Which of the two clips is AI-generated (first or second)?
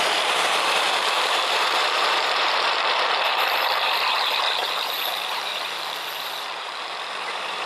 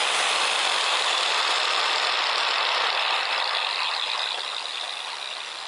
first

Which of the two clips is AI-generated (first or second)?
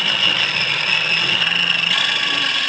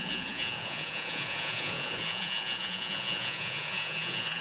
second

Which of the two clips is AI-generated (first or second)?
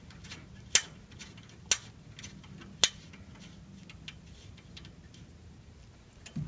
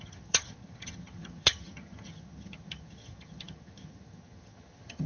second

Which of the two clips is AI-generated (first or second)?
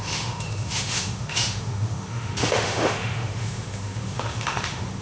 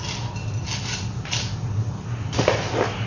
first